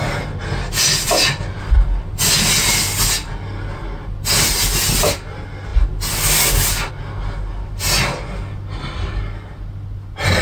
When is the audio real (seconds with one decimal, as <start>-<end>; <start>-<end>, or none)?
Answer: 0.0-10.4